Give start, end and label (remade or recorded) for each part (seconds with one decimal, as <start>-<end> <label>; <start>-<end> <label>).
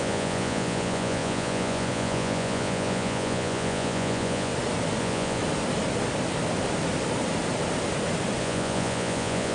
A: 0.0-4.5 remade; 4.5-5.0 recorded; 5.0-5.4 remade; 5.4-8.4 recorded; 8.4-9.5 remade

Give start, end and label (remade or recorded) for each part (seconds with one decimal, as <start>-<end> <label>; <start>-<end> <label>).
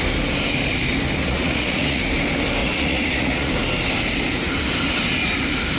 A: 0.0-1.2 recorded; 1.2-2.0 remade; 2.0-2.6 recorded; 2.6-3.5 remade; 3.5-5.8 recorded